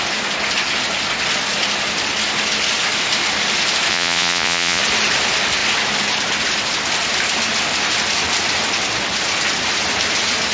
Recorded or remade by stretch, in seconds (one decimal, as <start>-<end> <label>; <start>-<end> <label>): 0.0-3.9 recorded; 3.9-4.8 remade; 4.8-10.5 recorded